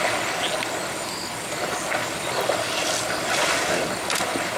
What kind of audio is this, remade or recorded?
recorded